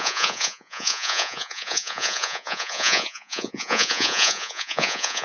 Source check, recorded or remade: remade